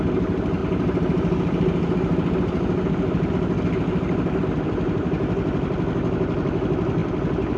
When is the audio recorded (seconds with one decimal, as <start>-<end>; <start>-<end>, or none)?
0.0-7.6